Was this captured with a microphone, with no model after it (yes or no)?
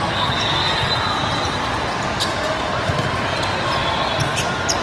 yes